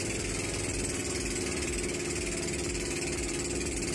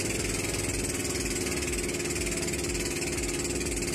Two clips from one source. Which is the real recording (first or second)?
second